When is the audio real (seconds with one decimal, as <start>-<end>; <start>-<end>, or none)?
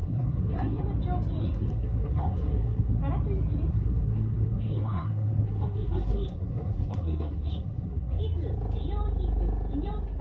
0.8-1.4; 3.0-3.7; 8.2-10.2